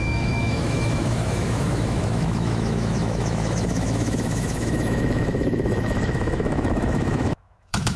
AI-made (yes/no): yes